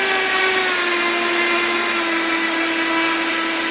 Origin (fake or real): real